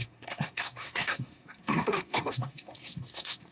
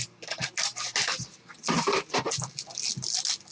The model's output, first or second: first